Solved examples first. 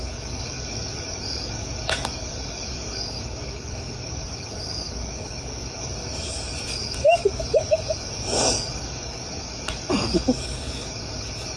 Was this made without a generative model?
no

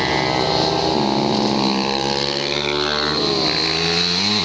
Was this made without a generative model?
yes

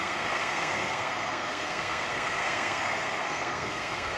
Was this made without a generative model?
no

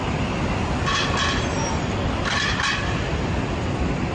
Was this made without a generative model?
yes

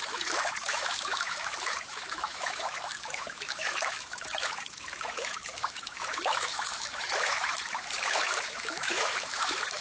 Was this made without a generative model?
no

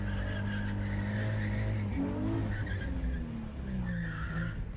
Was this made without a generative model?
yes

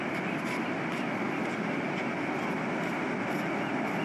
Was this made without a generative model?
yes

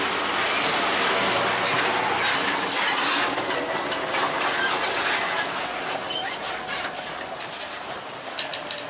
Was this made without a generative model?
yes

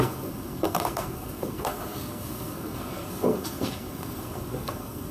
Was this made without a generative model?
no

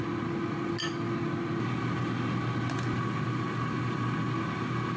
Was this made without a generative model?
yes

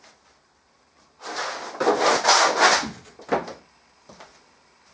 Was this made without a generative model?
yes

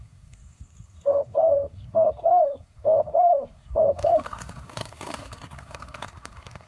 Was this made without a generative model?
no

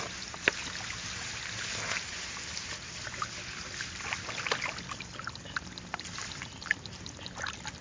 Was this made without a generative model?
yes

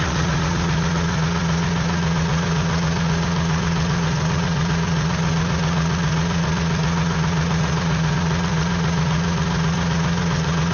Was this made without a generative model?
no